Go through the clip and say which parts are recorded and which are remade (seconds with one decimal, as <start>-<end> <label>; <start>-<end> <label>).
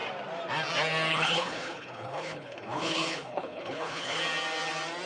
0.0-1.1 recorded; 1.1-4.2 remade; 4.2-5.1 recorded